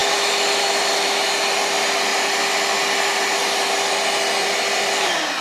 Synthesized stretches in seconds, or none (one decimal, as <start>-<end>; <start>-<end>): 0.0-1.3